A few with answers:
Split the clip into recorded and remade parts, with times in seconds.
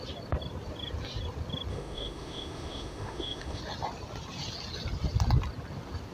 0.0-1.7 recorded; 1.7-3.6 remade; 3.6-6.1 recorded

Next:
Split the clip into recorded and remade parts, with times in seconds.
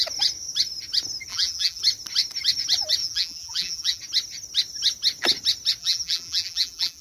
0.0-1.3 recorded; 1.3-1.8 remade; 1.8-3.0 recorded; 3.0-4.0 remade; 4.0-5.8 recorded; 5.8-7.0 remade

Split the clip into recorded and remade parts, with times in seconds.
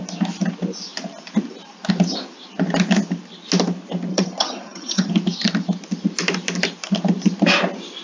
0.0-4.1 recorded; 4.1-5.1 remade; 5.1-8.0 recorded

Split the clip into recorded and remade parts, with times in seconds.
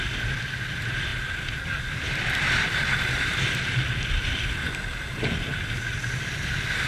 0.0-1.1 recorded; 1.1-4.7 remade; 4.7-6.9 recorded